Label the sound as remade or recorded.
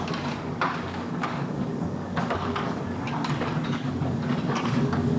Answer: remade